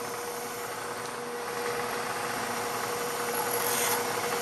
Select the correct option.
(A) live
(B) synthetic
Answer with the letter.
A